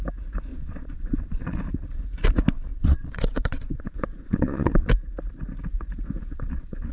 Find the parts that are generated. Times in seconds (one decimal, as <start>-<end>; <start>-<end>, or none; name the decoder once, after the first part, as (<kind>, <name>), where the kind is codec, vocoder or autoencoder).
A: 0.5-1.6 (vocoder, Vocos); 2.7-4.9; 6.2-6.9